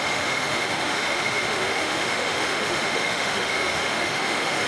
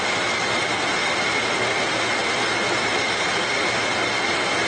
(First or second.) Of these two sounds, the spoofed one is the first